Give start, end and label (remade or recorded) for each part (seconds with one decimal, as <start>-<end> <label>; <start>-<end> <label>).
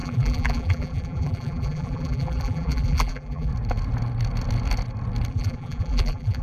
0.0-3.5 remade; 3.5-5.3 recorded; 5.3-6.4 remade